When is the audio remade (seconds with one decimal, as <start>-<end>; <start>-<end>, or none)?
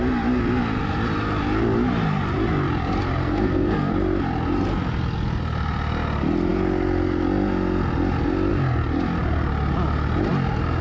3.2-3.9